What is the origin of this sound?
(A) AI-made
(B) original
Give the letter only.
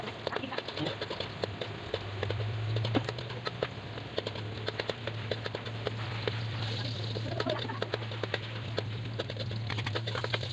B